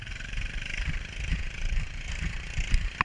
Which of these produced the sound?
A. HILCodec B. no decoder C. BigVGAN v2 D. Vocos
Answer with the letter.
C